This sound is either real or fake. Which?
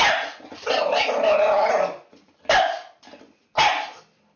real